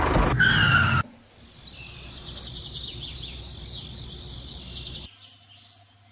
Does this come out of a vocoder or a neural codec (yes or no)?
no